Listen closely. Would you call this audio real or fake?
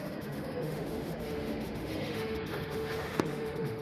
fake